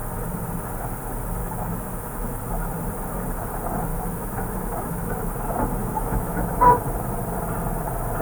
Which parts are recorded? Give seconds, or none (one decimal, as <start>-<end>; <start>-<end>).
0.0-1.4; 2.4-3.9; 5.1-5.8; 6.8-8.2